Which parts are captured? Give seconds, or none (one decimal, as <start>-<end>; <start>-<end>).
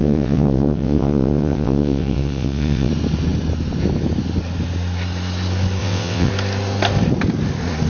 2.9-5.8; 6.3-7.9